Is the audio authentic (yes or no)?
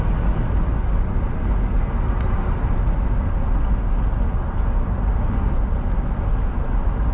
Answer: yes